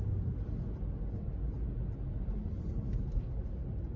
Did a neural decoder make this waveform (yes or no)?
no